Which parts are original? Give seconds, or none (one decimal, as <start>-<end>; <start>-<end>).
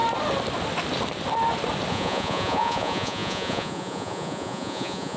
0.0-1.9